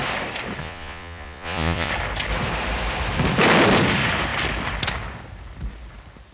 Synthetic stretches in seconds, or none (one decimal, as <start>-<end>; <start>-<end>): 0.6-1.9